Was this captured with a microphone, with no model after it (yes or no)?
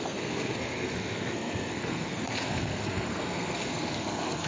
no